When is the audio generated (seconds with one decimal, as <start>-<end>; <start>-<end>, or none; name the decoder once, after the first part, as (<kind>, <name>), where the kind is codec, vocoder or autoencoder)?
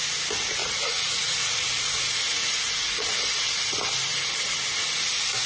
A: 0.6-3.0 (vocoder, Vocos)